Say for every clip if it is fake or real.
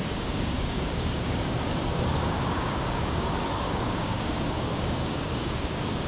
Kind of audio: fake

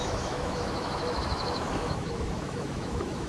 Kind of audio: fake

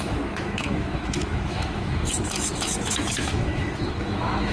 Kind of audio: fake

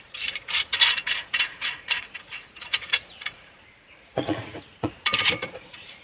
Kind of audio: fake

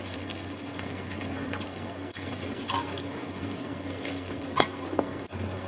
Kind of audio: fake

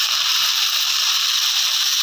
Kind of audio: fake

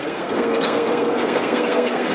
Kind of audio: fake